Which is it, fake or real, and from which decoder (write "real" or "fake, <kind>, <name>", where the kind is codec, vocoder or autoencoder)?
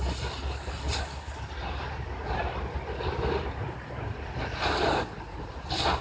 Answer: real